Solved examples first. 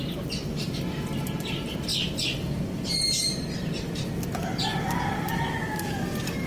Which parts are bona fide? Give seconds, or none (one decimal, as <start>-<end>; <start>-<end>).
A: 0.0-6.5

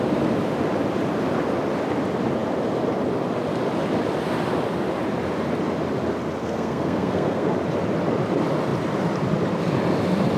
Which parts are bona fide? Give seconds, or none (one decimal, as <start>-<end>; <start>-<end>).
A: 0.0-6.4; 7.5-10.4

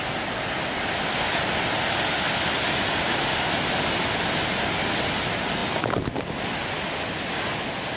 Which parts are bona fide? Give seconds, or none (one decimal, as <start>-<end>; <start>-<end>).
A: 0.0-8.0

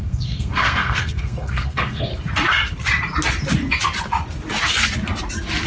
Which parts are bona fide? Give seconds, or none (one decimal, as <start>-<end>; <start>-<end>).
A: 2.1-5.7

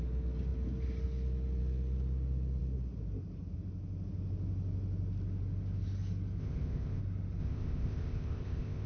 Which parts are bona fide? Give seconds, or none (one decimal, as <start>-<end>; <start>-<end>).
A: 0.0-6.4; 7.0-7.4